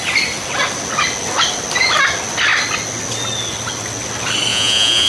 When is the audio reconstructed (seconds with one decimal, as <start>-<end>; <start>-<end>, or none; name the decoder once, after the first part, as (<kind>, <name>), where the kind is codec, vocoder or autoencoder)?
4.5-5.1 (vocoder, Vocos)